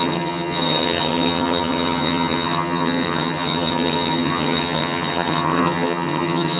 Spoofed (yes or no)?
yes